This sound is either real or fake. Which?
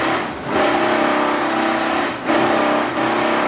real